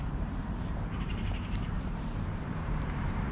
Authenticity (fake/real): fake